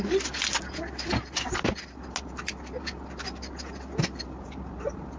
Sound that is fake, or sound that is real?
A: real